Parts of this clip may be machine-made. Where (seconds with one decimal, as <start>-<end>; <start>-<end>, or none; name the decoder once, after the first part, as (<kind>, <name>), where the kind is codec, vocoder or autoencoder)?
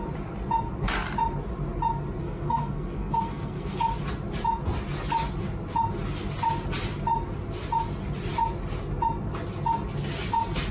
2.2-3.8 (codec, SNAC)